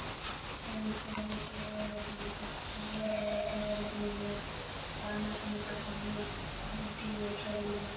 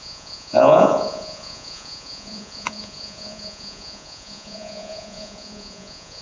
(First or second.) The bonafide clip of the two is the first